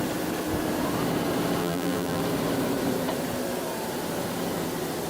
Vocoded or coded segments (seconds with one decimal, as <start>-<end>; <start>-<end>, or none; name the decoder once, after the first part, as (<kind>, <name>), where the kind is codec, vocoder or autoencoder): 1.6-2.2 (vocoder, BigVGAN v2)